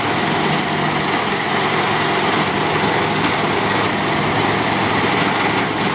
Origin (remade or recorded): recorded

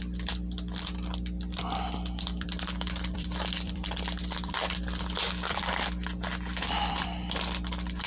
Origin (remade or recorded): remade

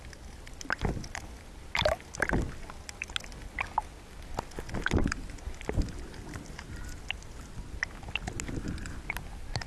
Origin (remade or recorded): recorded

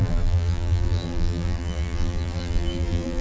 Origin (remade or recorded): remade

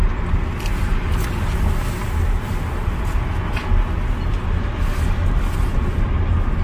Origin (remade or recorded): recorded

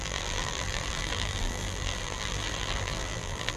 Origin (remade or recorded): remade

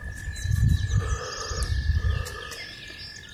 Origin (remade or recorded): recorded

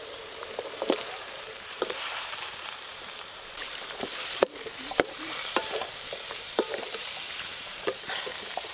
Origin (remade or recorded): remade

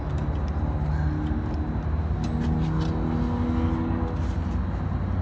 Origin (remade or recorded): recorded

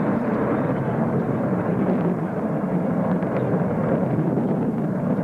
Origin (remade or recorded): remade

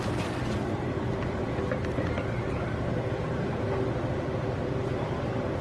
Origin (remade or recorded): remade